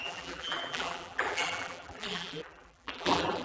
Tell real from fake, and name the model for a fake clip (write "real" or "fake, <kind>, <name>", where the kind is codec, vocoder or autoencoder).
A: fake, vocoder, BigVGAN v2